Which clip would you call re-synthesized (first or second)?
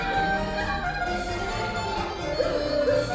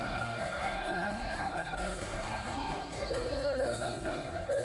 second